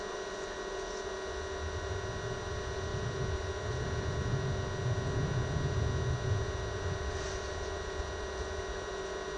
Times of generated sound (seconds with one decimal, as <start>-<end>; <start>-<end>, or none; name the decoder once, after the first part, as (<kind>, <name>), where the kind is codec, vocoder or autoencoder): none